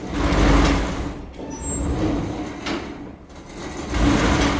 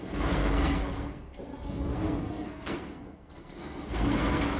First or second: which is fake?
second